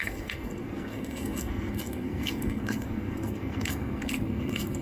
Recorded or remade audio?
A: remade